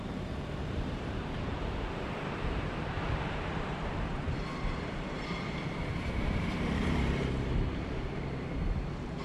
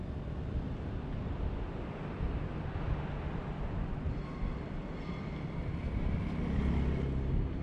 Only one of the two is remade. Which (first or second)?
first